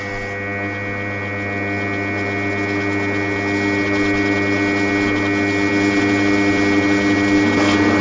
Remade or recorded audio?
recorded